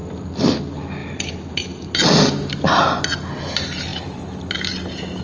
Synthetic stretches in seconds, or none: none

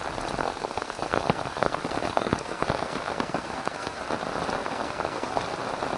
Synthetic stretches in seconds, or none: 0.4-4.0 (codec, SNAC); 4.6-5.4